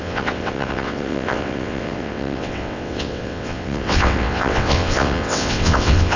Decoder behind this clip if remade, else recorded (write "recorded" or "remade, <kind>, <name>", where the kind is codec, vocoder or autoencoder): remade, vocoder, WaveNeXt